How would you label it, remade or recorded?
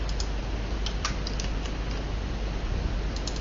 recorded